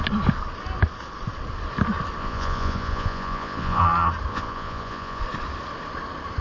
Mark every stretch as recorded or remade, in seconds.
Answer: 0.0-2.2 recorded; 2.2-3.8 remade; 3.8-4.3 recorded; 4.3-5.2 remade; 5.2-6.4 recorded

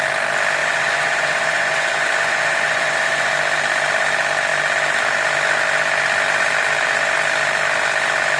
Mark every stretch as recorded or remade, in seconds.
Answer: 0.0-0.6 recorded; 0.6-3.3 remade; 3.3-8.4 recorded

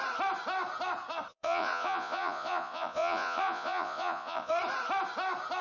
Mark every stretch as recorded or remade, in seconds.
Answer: 0.0-1.3 recorded; 1.3-4.5 remade; 4.5-5.6 recorded

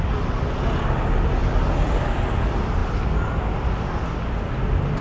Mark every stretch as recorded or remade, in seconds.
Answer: 0.0-5.0 recorded

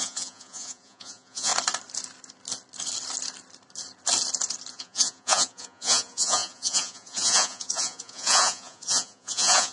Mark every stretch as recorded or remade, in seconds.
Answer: 0.0-1.5 remade; 1.5-4.7 recorded; 4.7-9.7 remade

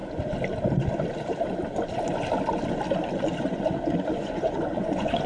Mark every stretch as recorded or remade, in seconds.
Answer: 0.0-3.2 recorded; 3.2-5.3 remade

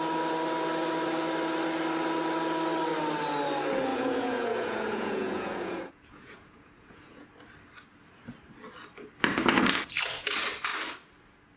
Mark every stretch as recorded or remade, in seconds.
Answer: 0.0-3.9 recorded; 3.9-7.3 remade; 7.3-11.6 recorded